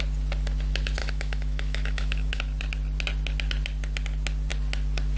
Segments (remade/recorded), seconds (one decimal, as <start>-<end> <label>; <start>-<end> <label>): 0.0-1.0 recorded; 1.0-2.4 remade; 2.4-5.2 recorded